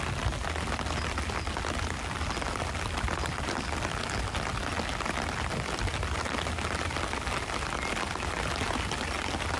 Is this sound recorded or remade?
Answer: recorded